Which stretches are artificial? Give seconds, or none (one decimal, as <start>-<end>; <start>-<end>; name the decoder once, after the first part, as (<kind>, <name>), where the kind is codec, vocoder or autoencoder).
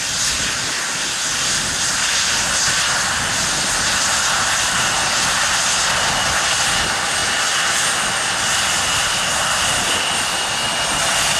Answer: none